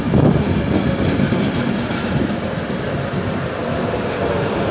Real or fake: real